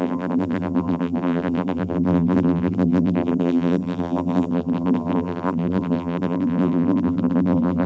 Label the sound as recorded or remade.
remade